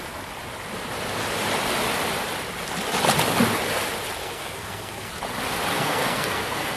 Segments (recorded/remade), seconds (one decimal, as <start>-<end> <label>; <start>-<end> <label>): 0.0-4.2 recorded; 4.2-5.1 remade; 5.1-5.7 recorded; 5.7-6.8 remade